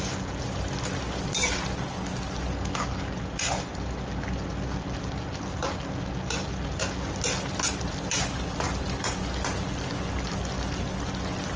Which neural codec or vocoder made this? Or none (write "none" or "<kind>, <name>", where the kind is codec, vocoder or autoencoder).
none